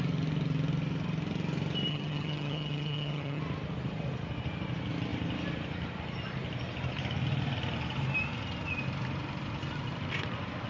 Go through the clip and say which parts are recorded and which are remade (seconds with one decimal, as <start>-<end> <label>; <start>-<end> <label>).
0.0-1.9 recorded; 1.9-3.4 remade; 3.4-10.7 recorded

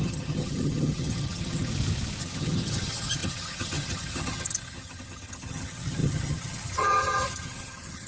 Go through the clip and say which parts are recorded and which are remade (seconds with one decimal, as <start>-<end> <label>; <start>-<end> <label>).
0.0-1.7 remade; 1.7-2.2 recorded; 2.2-8.1 remade

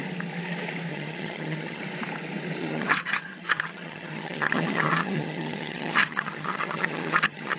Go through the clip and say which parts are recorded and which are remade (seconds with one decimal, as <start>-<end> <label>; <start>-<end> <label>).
0.0-0.9 recorded; 0.9-1.8 remade; 1.8-2.6 recorded; 2.6-7.6 remade